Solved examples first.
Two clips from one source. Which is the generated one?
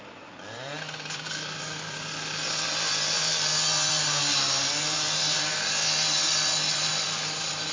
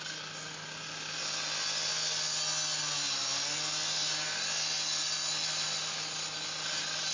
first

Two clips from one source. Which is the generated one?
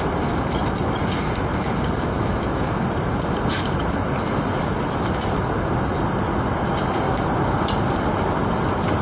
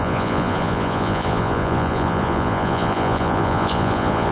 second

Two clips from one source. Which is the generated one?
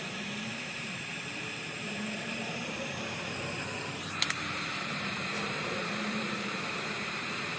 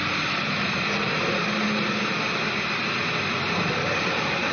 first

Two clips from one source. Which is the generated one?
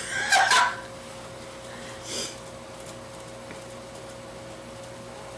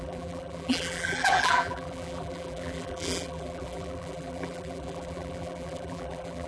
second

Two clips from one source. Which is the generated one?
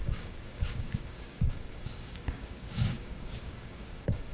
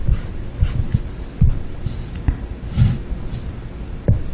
first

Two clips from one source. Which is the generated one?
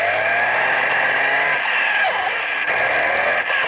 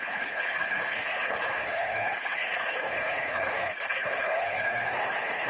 second